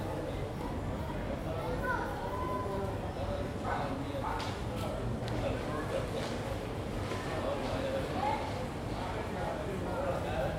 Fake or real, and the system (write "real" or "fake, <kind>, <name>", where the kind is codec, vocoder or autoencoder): real